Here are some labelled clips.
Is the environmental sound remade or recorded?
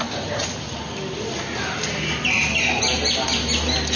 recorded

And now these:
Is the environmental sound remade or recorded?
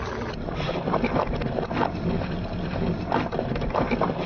recorded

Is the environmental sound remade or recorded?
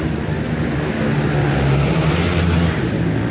recorded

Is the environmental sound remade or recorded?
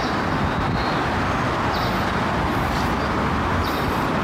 recorded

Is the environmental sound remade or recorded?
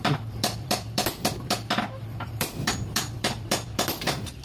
remade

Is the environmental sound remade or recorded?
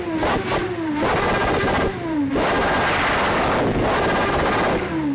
recorded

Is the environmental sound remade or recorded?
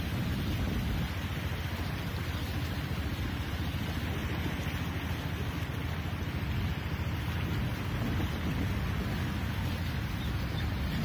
recorded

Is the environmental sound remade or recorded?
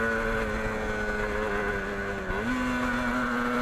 recorded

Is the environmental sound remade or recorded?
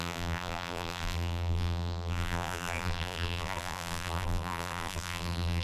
remade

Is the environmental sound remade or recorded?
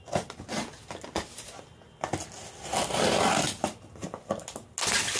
recorded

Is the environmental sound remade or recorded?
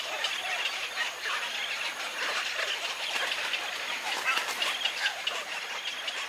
recorded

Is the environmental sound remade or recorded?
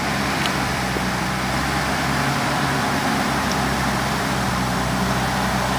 remade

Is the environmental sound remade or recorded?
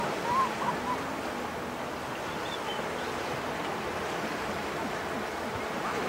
recorded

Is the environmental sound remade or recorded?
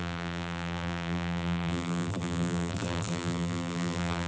remade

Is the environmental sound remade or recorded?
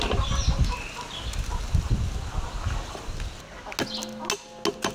recorded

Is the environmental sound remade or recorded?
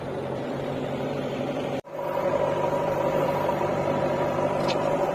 remade